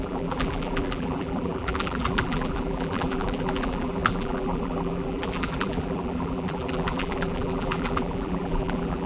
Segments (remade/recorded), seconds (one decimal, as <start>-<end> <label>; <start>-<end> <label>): 0.0-9.1 remade